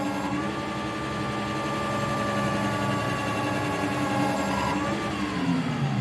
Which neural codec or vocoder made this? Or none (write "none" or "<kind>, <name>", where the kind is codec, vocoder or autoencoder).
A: none